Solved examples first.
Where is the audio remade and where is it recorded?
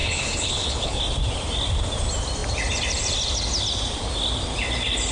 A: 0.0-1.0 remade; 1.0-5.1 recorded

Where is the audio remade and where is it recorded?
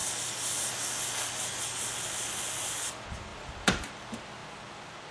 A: 0.0-5.1 recorded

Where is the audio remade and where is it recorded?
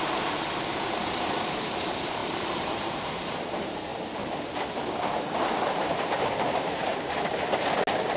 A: 0.0-3.9 remade; 3.9-5.2 recorded; 5.2-6.9 remade; 6.9-8.2 recorded